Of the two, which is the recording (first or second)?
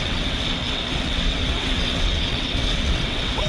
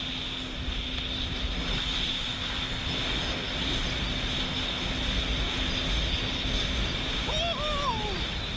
second